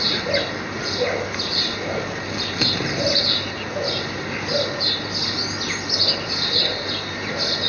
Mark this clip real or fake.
real